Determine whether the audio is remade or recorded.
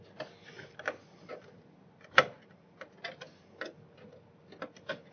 recorded